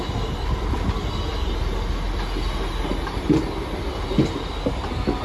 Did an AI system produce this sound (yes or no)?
no